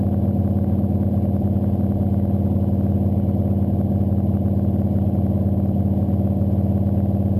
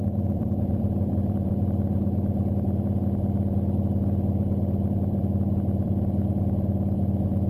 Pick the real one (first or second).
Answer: first